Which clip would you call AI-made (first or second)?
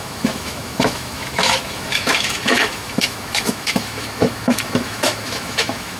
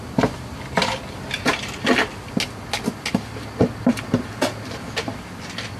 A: first